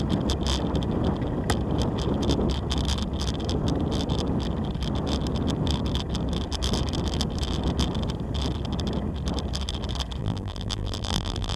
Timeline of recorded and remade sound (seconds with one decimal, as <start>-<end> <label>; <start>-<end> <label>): 0.0-10.2 recorded; 10.2-11.6 remade